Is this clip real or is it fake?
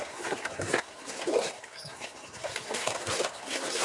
fake